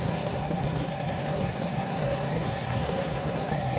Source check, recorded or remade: remade